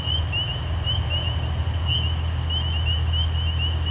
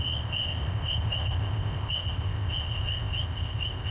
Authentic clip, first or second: first